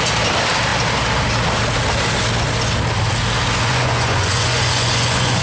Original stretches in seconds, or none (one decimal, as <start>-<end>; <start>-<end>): 0.0-3.7